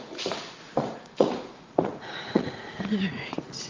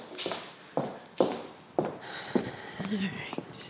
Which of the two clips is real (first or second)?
second